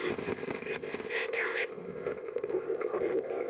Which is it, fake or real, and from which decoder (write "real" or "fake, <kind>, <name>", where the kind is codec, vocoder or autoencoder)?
fake, codec, ZipCodec